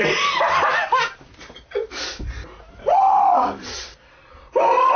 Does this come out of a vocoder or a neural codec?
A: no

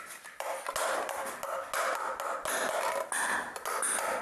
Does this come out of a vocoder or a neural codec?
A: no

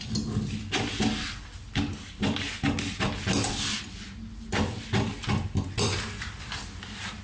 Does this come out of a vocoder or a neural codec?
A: no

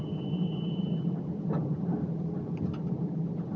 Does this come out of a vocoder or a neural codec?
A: no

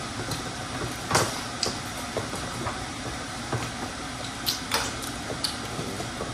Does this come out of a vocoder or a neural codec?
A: no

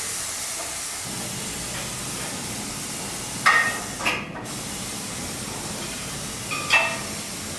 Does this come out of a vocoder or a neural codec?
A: no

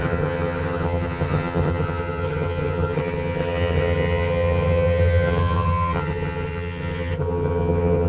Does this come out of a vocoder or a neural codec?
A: yes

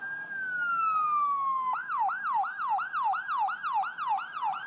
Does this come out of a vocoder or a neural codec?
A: no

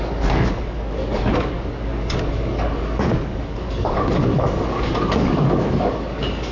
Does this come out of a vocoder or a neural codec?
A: yes